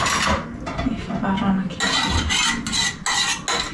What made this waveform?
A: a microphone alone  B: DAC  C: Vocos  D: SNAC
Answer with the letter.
A